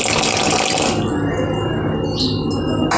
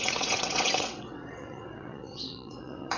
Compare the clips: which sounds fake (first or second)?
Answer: second